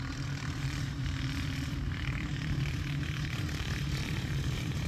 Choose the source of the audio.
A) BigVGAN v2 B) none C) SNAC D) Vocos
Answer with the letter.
A